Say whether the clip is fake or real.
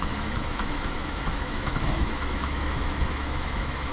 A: fake